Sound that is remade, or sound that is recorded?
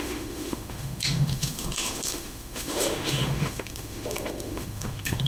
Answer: remade